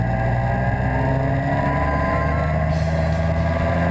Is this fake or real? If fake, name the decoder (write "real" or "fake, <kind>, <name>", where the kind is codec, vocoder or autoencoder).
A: real